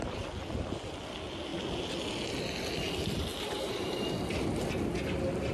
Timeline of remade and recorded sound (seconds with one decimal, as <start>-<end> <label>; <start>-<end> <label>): 0.0-3.3 recorded; 3.3-4.1 remade; 4.1-5.5 recorded